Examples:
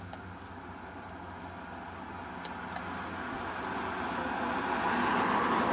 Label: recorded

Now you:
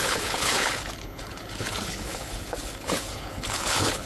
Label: remade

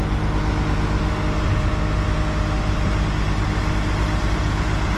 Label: recorded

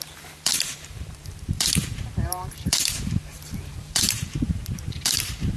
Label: remade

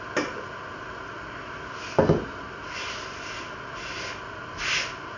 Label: recorded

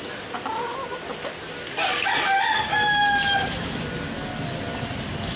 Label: recorded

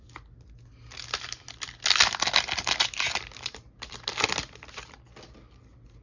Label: recorded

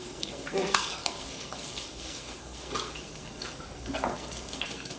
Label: remade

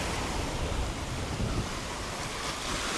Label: recorded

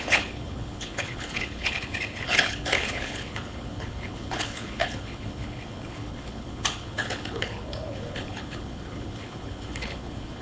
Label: remade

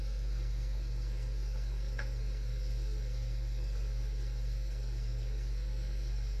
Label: remade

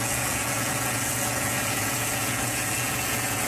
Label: remade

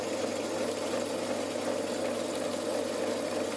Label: recorded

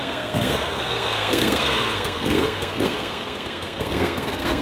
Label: remade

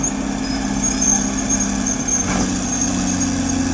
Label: recorded